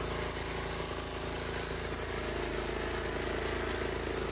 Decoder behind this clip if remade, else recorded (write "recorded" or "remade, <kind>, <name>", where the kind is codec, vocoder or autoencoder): recorded